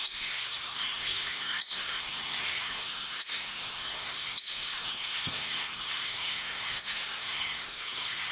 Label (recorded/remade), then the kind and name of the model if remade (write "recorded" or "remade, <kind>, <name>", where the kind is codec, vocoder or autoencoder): remade, codec, SNAC